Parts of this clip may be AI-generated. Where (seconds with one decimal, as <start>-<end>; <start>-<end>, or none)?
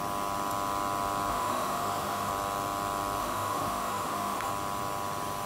1.3-2.3; 3.2-4.5